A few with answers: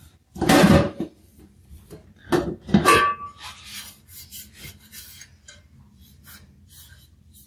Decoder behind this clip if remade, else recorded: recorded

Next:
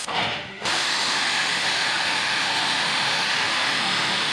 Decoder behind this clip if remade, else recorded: remade, autoencoder, DAC-VAE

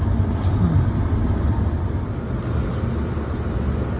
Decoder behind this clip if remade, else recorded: recorded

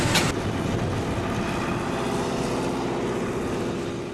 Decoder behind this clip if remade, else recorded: recorded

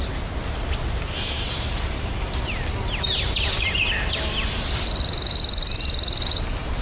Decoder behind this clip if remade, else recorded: recorded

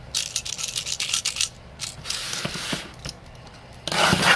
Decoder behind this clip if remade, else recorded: recorded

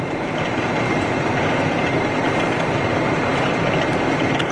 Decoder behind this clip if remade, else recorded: remade, vocoder, BigVGAN v2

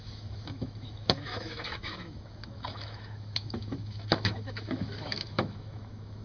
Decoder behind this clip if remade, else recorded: remade, autoencoder, DAC-VAE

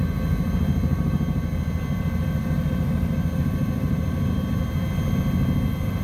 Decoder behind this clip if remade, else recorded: recorded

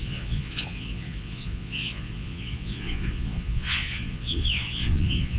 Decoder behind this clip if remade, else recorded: remade, vocoder, Vocos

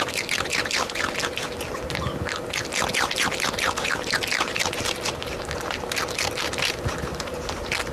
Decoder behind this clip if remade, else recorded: recorded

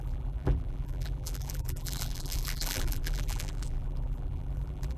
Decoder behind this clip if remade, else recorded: remade, vocoder, BigVGAN v2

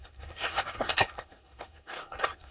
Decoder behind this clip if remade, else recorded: remade, codec, SNAC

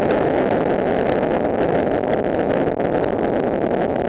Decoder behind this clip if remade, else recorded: recorded